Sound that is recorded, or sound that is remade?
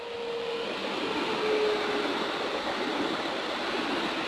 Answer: recorded